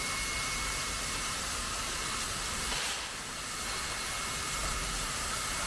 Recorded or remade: remade